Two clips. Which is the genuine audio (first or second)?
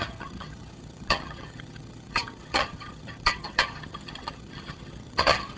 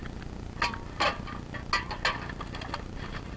second